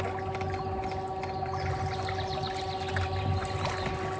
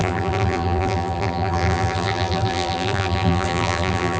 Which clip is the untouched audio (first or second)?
first